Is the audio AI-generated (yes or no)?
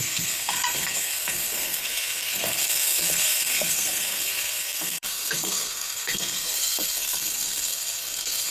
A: yes